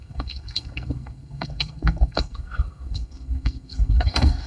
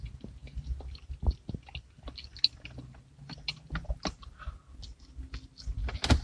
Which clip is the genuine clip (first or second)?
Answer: second